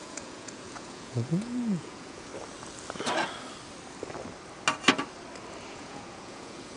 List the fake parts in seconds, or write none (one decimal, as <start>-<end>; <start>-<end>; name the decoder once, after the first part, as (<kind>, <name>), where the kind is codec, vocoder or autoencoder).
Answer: 0.0-2.3 (vocoder, Vocos); 5.7-6.8